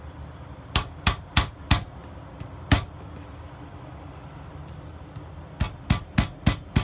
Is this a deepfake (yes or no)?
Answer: no